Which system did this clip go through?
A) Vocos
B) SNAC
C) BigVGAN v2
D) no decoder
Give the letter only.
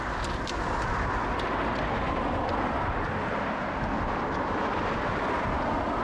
C